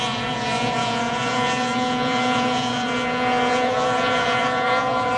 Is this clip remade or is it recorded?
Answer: remade